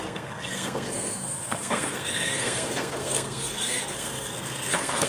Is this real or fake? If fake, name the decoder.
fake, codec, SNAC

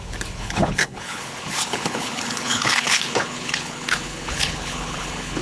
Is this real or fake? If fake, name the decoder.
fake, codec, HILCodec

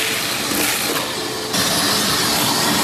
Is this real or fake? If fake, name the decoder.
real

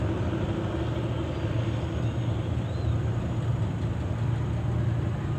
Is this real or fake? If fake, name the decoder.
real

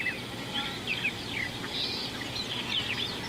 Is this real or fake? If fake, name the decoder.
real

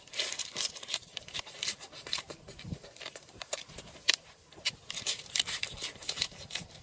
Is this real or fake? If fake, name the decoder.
fake, vocoder, BigVGAN v2